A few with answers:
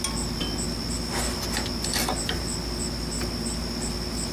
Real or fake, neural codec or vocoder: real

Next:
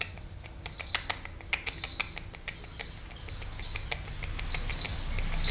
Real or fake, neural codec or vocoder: real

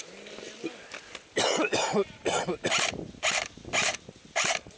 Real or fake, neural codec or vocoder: real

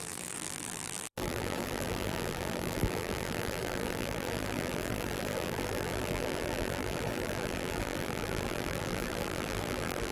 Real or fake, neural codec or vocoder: fake, vocoder, BigVGAN v2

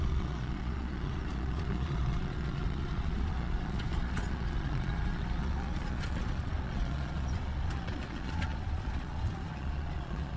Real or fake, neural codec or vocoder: fake, vocoder, Vocos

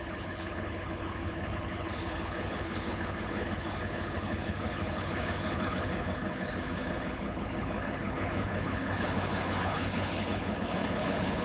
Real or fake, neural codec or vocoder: fake, codec, HILCodec